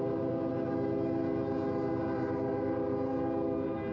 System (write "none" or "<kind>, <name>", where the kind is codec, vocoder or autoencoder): none